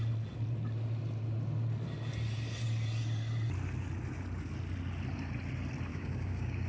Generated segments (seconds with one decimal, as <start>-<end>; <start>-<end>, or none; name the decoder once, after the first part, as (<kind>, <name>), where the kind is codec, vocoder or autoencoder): 5.9-6.7 (codec, DAC)